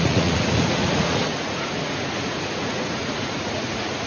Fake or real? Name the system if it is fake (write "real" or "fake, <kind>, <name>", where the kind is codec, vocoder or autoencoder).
fake, vocoder, Vocos